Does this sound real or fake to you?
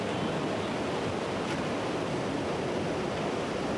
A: real